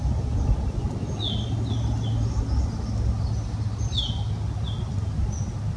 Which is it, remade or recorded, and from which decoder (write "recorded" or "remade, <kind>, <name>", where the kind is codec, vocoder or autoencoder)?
recorded